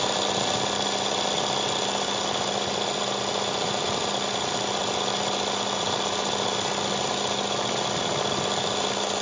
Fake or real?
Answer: real